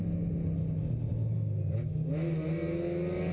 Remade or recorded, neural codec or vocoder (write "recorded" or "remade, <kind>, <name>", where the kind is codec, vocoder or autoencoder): recorded